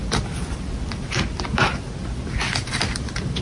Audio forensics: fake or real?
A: real